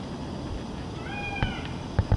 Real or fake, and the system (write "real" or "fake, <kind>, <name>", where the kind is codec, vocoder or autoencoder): real